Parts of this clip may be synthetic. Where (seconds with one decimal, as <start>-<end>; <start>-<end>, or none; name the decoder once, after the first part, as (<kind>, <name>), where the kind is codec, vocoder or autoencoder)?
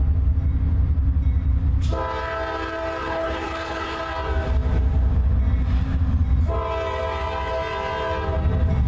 3.0-4.0 (codec, HILCodec)